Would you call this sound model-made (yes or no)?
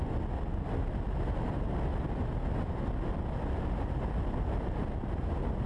no